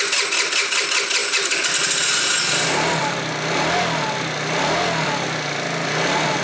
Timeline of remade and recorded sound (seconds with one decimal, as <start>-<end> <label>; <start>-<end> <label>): 0.0-6.4 recorded